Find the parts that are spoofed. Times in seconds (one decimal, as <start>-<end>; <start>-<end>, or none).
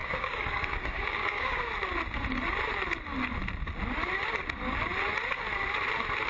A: 0.0-1.7